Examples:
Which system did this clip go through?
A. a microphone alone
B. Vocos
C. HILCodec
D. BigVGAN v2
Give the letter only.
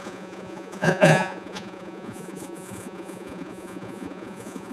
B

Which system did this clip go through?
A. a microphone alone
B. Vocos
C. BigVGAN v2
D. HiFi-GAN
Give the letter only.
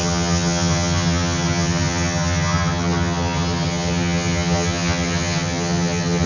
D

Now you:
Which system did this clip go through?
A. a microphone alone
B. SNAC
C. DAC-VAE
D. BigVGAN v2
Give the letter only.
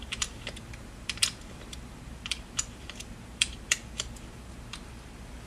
D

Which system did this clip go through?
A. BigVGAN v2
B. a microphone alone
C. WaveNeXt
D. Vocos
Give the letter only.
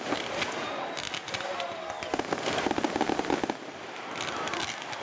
B